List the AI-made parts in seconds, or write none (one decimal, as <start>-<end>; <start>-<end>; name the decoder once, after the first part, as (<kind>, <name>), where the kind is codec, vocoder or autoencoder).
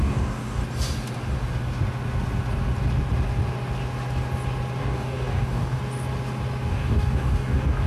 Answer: 0.0-0.6 (codec, DAC); 4.8-5.8; 6.7-7.9